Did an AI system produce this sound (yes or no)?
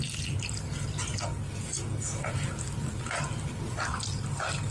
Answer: no